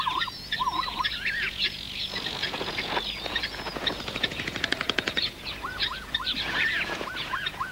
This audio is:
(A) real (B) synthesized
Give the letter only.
B